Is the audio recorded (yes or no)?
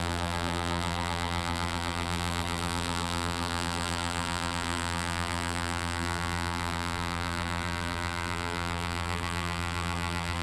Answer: no